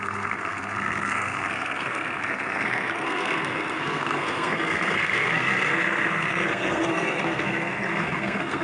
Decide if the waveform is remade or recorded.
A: remade